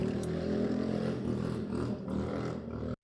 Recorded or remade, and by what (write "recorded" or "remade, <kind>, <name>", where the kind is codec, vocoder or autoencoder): remade, vocoder, BigVGAN v2